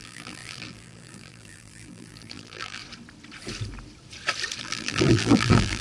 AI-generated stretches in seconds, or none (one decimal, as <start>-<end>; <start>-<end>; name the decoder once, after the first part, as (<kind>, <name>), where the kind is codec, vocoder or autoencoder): 0.0-2.8 (vocoder, BigVGAN v2); 4.6-5.8